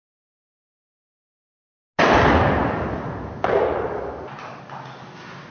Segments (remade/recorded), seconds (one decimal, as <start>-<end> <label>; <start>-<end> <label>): 0.0-5.5 recorded